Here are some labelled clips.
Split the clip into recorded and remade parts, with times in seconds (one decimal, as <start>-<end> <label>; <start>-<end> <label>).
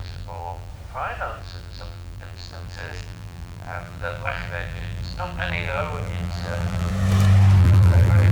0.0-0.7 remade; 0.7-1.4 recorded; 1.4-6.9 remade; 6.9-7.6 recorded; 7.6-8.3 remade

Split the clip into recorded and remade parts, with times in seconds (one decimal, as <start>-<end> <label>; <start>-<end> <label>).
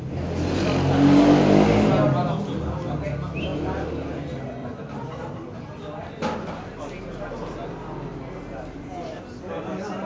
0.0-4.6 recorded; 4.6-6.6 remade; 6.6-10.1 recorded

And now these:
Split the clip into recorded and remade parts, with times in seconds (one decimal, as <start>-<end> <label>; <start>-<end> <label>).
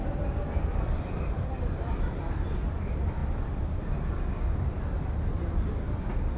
0.0-0.7 recorded; 0.7-2.2 remade; 2.2-6.4 recorded